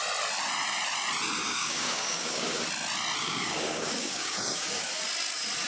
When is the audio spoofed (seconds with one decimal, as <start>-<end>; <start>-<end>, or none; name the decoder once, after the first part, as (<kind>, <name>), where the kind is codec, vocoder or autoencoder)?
1.4-2.6 (codec, DAC); 3.2-4.9